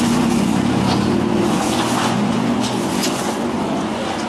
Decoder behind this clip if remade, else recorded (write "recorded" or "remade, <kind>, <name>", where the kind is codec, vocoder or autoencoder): remade, vocoder, Vocos